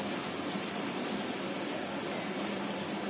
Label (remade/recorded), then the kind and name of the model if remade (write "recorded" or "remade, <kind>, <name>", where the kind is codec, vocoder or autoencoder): recorded